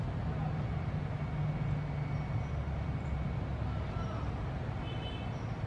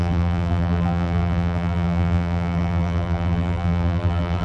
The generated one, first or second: second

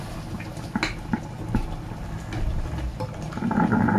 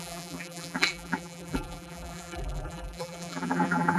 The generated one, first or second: second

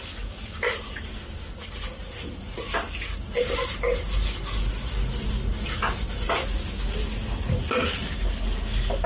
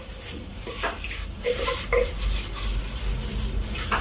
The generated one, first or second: second